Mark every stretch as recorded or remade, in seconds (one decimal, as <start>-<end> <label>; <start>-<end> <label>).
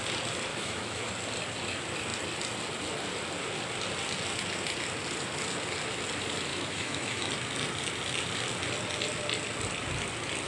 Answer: 0.0-0.5 recorded; 0.5-1.1 remade; 1.1-6.5 recorded; 6.5-7.3 remade; 7.3-10.5 recorded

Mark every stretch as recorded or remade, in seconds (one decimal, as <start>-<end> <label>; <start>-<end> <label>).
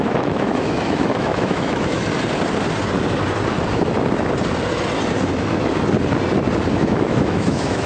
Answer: 0.0-2.0 remade; 2.0-6.7 recorded; 6.7-7.9 remade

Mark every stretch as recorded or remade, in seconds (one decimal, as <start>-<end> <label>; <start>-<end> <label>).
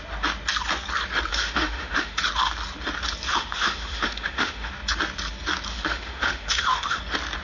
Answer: 0.0-1.3 recorded; 1.3-2.2 remade; 2.2-3.3 recorded; 3.3-4.7 remade; 4.7-5.7 recorded; 5.7-7.0 remade; 7.0-7.4 recorded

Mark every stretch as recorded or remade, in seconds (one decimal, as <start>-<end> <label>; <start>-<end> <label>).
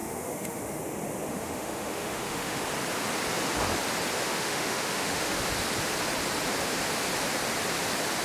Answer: 0.0-0.8 remade; 0.8-1.3 recorded; 1.3-2.6 remade; 2.6-4.2 recorded; 4.2-5.4 remade; 5.4-8.2 recorded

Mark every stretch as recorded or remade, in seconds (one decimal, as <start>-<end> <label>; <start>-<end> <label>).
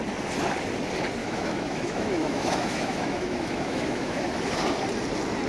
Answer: 0.0-1.2 recorded; 1.2-4.3 remade; 4.3-5.5 recorded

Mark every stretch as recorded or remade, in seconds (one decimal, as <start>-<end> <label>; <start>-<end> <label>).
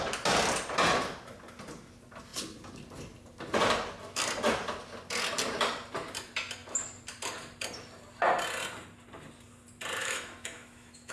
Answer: 0.0-10.0 recorded; 10.0-11.1 remade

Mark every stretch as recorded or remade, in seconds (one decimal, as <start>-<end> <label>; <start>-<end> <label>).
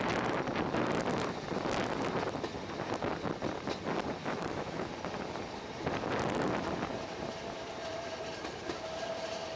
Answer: 0.0-4.2 recorded; 4.2-4.9 remade; 4.9-9.6 recorded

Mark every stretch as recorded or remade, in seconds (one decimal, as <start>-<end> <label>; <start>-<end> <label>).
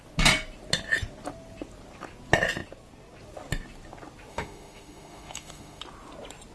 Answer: 0.0-4.3 recorded; 4.3-5.8 remade; 5.8-6.5 recorded